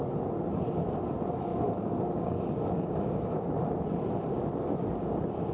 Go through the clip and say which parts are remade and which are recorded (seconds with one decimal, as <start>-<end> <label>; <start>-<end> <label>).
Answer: 0.0-1.5 recorded; 1.5-3.5 remade; 3.5-5.5 recorded